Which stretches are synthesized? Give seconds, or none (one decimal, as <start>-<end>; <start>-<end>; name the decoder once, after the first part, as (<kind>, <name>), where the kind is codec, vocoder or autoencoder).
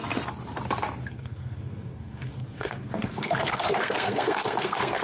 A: 1.1-5.0 (codec, SNAC)